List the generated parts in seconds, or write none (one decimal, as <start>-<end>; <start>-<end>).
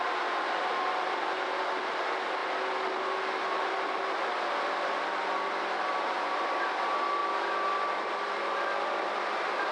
none